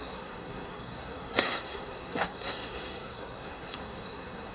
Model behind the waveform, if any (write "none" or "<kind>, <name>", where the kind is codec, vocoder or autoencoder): codec, SNAC